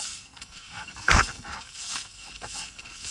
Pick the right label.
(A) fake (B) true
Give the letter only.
A